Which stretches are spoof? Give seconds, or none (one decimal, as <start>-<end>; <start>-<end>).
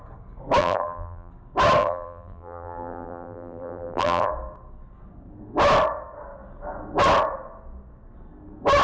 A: 0.6-1.3; 1.8-4.3